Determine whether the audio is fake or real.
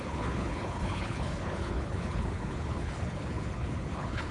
fake